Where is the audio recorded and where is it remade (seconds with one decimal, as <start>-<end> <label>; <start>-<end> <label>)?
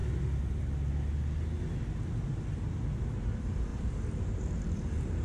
0.0-3.1 recorded; 3.1-5.2 remade